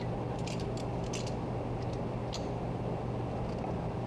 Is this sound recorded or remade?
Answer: recorded